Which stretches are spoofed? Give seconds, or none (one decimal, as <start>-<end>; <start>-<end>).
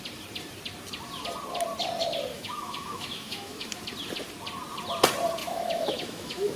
2.3-3.8; 5.4-6.6